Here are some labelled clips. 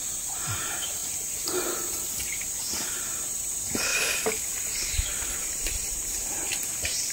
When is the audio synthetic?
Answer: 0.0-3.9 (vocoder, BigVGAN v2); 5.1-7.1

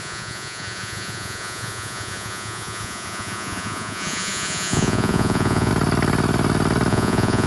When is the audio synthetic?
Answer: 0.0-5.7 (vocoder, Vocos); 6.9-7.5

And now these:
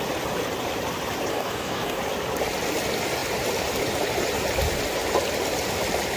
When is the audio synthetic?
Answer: 1.3-2.0 (codec, DAC)

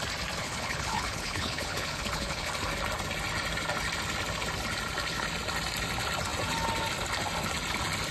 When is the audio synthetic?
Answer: 0.4-2.5 (codec, HILCodec)

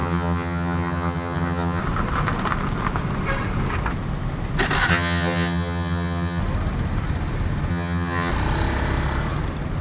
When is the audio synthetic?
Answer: 0.0-1.8 (vocoder, HiFi-GAN); 4.9-6.4; 7.7-8.3

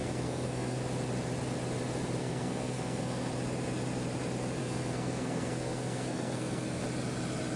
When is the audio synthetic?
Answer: 0.0-0.8 (codec, SNAC); 2.2-3.3; 4.6-6.8